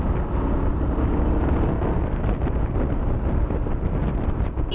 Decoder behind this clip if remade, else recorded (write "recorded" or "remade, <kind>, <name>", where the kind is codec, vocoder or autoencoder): recorded